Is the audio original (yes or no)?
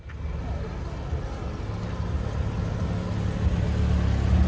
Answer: yes